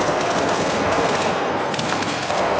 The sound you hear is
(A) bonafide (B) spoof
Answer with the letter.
B